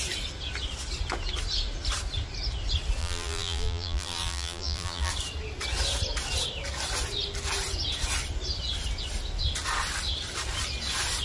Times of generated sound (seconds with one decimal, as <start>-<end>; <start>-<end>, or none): 3.0-5.1

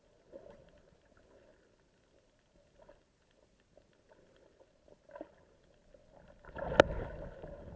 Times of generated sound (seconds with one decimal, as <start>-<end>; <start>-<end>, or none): none